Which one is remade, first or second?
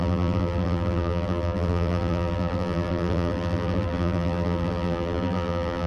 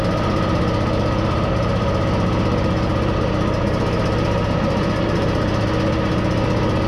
first